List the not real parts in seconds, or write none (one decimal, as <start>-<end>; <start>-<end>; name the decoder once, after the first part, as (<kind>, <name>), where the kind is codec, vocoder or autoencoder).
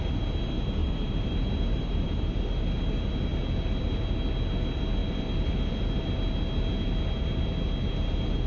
0.8-2.4 (vocoder, BigVGAN v2)